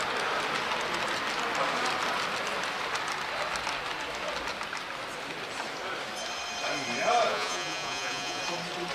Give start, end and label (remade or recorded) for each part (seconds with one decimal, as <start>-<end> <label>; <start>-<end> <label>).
0.0-7.3 recorded; 7.3-8.4 remade; 8.4-8.9 recorded